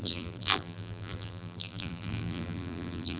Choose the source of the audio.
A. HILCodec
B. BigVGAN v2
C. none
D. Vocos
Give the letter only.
B